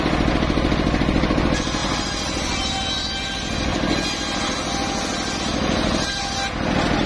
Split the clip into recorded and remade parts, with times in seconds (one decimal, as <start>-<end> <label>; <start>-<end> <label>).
0.0-7.1 recorded